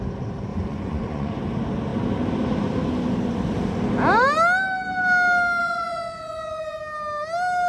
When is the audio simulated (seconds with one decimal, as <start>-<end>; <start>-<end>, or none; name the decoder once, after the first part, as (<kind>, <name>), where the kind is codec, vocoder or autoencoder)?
0.5-1.4 (vocoder, Vocos); 5.6-6.8